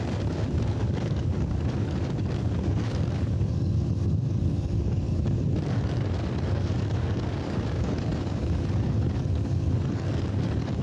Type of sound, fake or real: fake